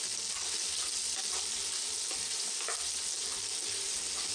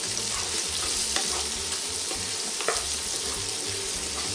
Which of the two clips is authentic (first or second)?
first